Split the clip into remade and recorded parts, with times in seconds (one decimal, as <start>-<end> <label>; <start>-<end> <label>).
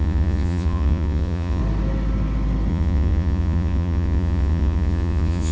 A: 0.0-1.6 remade; 1.6-2.7 recorded; 2.7-5.5 remade